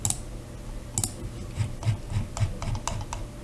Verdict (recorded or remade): recorded